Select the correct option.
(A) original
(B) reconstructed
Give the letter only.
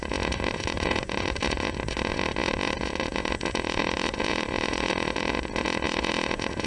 B